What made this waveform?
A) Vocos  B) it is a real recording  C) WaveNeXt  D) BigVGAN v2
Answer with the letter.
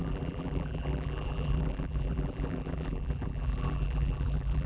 D